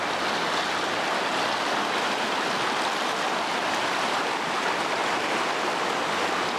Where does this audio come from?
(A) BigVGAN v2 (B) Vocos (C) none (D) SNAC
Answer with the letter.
C